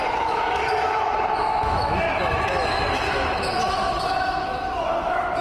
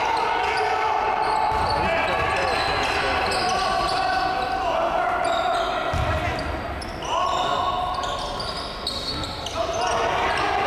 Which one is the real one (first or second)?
second